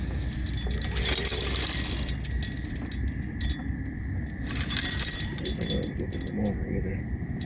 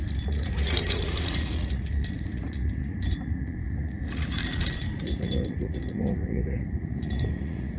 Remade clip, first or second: second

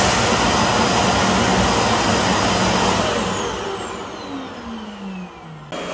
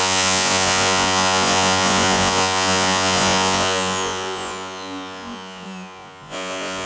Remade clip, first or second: second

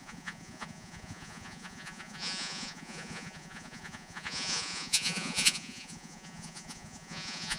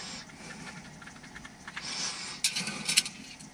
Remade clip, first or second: first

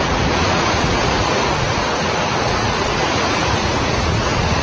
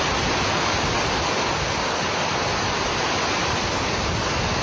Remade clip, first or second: first